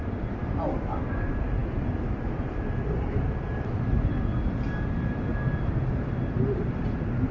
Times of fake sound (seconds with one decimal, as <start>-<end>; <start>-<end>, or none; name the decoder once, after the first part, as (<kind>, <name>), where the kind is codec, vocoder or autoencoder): none